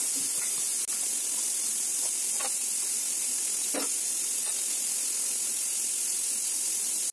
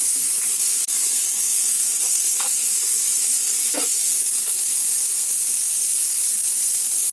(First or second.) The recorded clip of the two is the first